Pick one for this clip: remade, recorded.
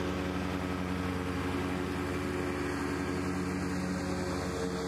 recorded